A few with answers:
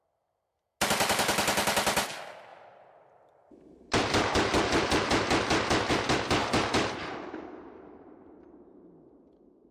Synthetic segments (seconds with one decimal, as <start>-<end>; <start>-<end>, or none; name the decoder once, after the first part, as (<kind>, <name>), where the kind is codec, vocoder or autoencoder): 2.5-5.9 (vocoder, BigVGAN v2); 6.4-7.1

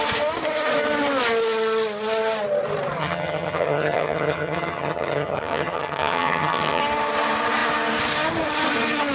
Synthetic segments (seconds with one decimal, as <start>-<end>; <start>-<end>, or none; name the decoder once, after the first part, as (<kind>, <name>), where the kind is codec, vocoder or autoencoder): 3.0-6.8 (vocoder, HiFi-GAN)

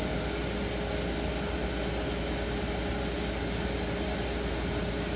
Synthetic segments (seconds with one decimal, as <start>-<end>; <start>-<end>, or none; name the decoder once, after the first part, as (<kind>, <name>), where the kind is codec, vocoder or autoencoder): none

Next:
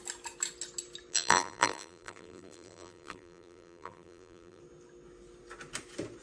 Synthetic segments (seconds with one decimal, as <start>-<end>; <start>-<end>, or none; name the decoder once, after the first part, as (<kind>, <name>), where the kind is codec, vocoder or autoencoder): 1.1-4.6 (vocoder, BigVGAN v2)

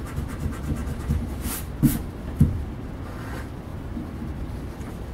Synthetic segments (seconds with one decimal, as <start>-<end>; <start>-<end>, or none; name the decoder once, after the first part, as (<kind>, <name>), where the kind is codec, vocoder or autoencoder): 3.7-4.6 (vocoder, BigVGAN v2)

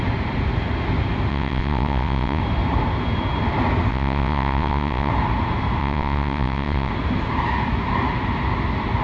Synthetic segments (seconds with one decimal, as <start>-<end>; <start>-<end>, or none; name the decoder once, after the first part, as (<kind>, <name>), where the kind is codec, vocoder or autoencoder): 1.3-2.4 (vocoder, WaveNeXt); 3.9-5.1; 5.8-6.9